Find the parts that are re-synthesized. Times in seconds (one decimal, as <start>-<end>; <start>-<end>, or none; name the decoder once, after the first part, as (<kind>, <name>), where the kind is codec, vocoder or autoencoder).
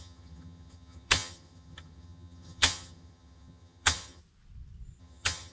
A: 0.0-4.2 (vocoder, HiFi-GAN); 5.0-5.5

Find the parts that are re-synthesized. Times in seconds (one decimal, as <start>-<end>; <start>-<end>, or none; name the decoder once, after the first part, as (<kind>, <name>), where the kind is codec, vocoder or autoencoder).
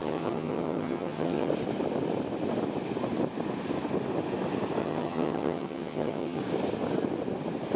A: 0.0-1.5 (vocoder, HiFi-GAN); 4.8-6.4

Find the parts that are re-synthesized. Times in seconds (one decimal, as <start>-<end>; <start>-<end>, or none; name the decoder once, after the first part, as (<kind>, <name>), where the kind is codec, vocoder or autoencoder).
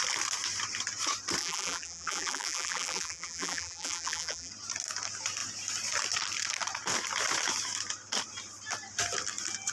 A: 1.4-4.5 (vocoder, BigVGAN v2)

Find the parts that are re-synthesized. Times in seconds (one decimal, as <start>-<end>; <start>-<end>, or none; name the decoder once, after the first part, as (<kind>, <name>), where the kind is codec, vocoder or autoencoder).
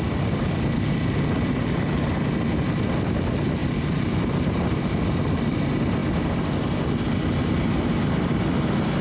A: 3.6-4.8 (vocoder, BigVGAN v2)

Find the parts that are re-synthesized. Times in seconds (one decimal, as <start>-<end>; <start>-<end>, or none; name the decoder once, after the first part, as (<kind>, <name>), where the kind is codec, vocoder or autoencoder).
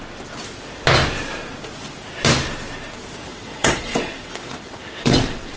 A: 3.3-5.6 (vocoder, WaveNeXt)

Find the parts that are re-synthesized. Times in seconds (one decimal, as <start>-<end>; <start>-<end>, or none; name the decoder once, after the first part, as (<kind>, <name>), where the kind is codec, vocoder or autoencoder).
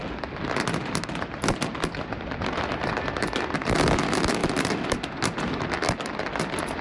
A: none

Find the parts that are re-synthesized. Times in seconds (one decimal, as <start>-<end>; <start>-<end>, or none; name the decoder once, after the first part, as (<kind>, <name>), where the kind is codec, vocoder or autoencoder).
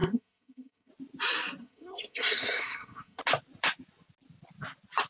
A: 0.0-0.9 (codec, SNAC); 1.6-3.2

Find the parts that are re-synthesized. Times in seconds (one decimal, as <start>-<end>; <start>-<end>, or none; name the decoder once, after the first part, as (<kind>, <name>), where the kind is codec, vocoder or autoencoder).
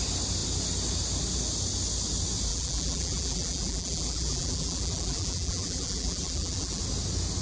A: 2.5-6.8 (vocoder, BigVGAN v2)